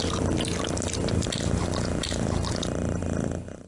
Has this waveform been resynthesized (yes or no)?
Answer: no